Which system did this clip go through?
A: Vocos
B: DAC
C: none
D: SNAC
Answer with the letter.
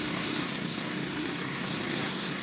D